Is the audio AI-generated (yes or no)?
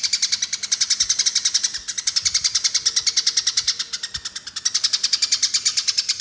no